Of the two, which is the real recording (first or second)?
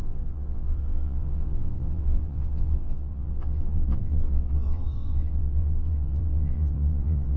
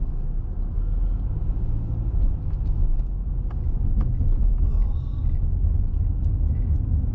second